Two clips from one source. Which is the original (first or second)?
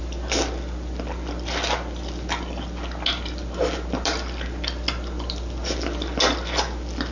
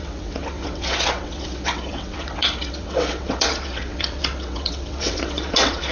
first